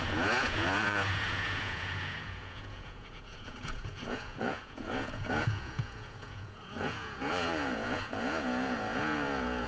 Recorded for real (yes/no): no